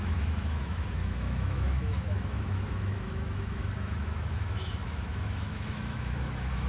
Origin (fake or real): fake